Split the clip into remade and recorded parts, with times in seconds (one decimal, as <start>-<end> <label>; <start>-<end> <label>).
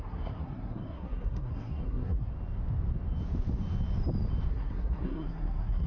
0.0-2.3 remade; 2.3-4.5 recorded; 4.5-5.9 remade